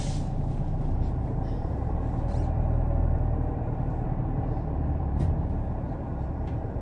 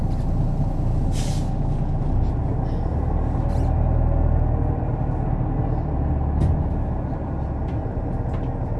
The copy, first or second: first